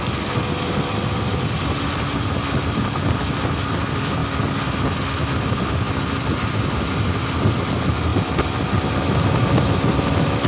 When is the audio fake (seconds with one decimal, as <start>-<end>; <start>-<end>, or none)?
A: none